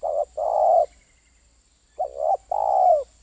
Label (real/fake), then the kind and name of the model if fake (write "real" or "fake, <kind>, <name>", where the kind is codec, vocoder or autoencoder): real